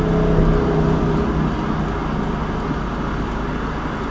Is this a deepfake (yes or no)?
no